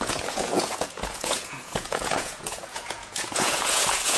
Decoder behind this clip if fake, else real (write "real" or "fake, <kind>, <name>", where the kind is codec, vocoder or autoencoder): fake, vocoder, Vocos